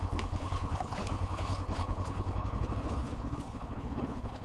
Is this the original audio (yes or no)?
no